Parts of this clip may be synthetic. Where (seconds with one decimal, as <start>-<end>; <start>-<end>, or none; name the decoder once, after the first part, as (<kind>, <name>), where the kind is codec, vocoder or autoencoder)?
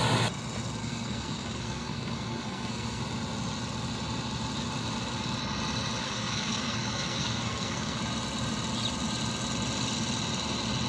0.8-3.0 (codec, SNAC); 6.0-8.0